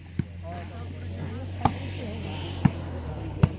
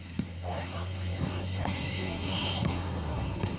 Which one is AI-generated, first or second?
second